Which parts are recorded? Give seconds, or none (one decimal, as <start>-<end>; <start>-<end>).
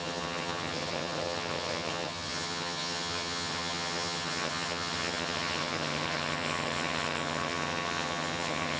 none